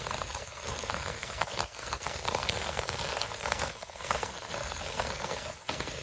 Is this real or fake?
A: fake